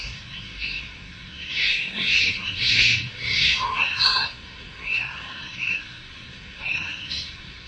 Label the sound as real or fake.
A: fake